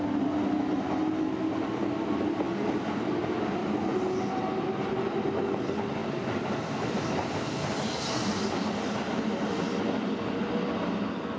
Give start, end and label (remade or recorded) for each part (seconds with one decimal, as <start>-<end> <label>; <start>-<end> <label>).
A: 0.0-11.4 recorded